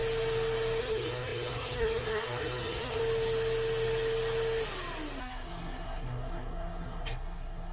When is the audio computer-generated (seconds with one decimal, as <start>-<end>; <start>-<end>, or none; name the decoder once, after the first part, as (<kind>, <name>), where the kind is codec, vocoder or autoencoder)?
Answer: 0.8-3.0 (codec, SNAC); 5.2-7.7